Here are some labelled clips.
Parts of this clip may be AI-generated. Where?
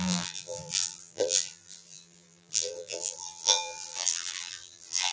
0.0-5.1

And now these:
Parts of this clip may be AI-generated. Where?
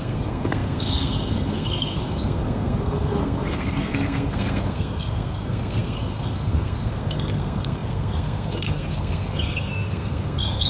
0.0-10.7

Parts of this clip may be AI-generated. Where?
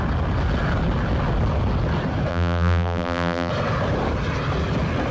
2.3-3.5